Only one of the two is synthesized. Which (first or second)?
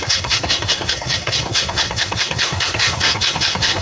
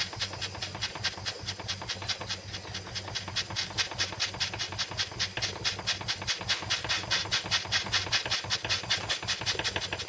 first